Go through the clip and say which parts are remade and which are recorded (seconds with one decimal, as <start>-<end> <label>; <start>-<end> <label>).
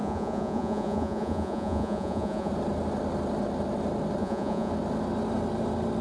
0.0-2.5 remade; 2.5-4.2 recorded; 4.2-4.7 remade; 4.7-6.0 recorded